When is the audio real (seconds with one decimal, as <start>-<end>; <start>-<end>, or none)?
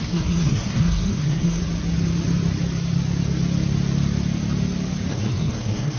1.6-5.1